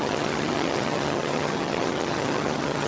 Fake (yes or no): yes